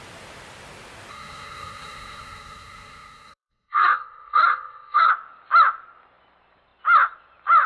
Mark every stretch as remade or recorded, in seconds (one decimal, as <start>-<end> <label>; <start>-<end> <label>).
0.0-1.1 recorded; 1.1-5.1 remade; 5.1-7.7 recorded